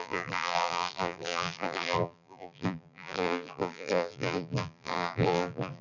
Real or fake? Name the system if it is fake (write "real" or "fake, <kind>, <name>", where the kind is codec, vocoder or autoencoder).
fake, vocoder, BigVGAN v2